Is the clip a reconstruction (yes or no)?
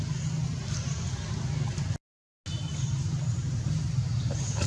no